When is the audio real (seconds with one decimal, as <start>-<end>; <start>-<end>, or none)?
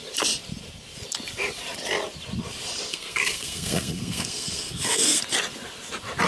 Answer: 0.0-2.9; 5.2-6.3